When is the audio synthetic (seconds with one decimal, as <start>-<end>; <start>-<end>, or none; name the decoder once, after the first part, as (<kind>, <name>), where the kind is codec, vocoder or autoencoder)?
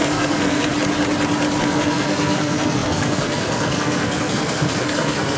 0.0-0.7 (codec, SNAC); 1.6-5.4